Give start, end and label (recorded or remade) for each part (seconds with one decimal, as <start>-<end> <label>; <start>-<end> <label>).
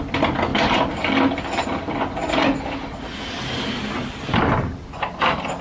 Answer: 0.0-0.5 recorded; 0.5-1.1 remade; 1.1-5.6 recorded